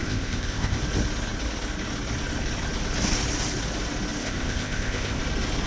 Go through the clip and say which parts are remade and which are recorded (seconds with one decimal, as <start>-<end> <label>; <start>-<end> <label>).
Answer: 0.0-0.8 remade; 0.8-4.2 recorded; 4.2-5.2 remade; 5.2-5.7 recorded